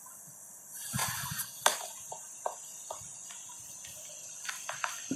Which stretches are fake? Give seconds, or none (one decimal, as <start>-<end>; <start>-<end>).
none